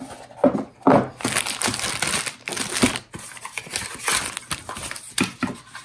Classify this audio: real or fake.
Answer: real